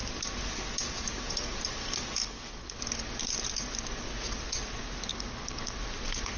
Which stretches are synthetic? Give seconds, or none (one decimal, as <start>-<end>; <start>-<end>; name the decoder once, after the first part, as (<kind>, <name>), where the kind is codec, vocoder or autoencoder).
2.2-2.8 (codec, HILCodec); 5.1-5.7